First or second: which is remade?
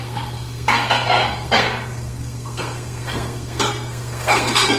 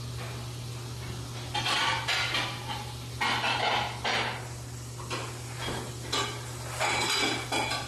first